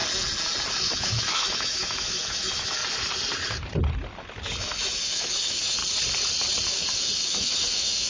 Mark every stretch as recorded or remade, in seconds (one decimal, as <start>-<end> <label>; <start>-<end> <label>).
0.0-0.7 recorded; 0.7-2.8 remade; 2.8-4.6 recorded; 4.6-5.8 remade; 5.8-6.7 recorded; 6.7-8.1 remade